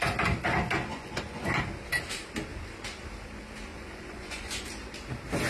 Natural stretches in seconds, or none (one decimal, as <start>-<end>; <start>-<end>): 0.0-0.9; 1.6-3.7; 4.7-5.5